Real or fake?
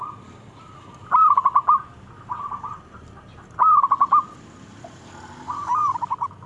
real